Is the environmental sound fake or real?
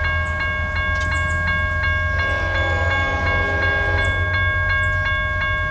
real